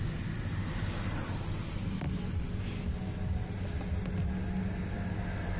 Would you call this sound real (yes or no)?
yes